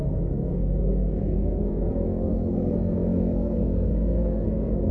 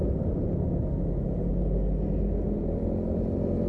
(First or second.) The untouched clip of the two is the second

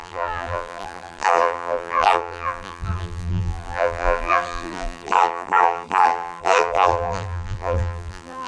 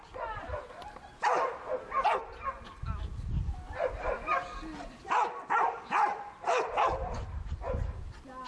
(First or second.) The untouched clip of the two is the second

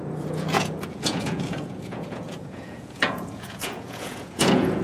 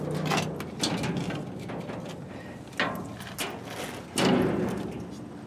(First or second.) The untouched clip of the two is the second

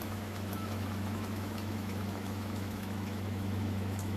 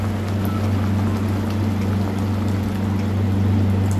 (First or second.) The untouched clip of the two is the second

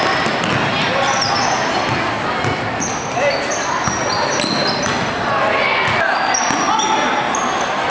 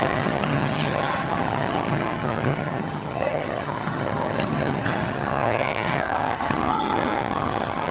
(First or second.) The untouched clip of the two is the first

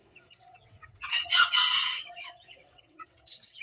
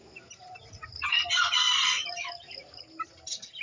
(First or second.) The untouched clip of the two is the second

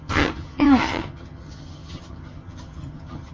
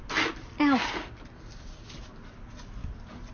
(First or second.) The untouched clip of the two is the second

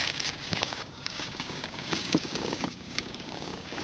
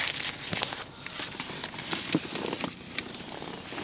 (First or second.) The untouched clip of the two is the second